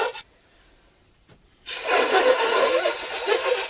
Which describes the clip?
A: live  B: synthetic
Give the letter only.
B